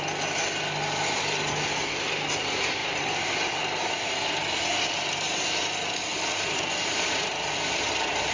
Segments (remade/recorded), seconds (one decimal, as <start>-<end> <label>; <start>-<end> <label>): 0.0-2.8 recorded; 2.8-3.6 remade; 3.6-6.1 recorded; 6.1-8.3 remade